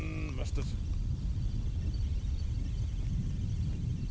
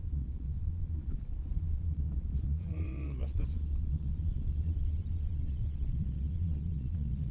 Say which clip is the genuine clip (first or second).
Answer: first